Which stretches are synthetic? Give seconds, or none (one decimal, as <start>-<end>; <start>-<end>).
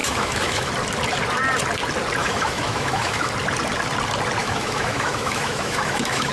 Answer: 0.0-0.7; 2.2-3.3; 4.4-6.3